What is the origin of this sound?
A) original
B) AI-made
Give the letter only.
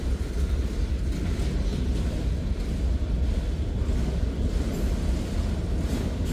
A